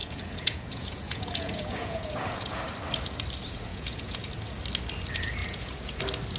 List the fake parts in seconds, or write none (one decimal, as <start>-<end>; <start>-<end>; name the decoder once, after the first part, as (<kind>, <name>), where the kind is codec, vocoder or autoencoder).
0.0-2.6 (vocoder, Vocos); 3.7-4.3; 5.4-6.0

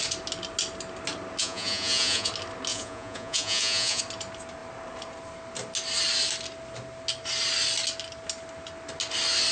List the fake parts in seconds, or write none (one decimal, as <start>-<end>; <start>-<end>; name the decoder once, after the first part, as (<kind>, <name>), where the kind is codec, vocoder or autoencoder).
1.4-2.3 (vocoder, Vocos); 2.7-4.0

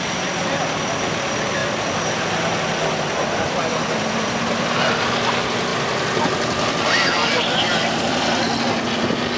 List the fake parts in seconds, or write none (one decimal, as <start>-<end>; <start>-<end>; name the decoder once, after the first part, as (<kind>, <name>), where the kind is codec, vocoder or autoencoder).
none

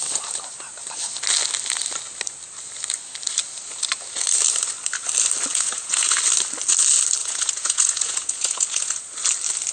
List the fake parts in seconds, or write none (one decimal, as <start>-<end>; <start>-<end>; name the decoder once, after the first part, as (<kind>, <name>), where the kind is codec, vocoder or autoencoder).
5.5-6.2 (vocoder, Vocos); 7.2-9.0

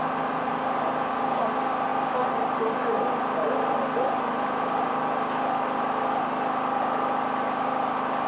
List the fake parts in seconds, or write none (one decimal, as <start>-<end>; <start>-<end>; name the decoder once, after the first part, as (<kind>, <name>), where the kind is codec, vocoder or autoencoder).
none